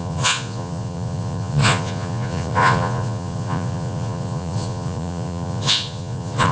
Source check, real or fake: fake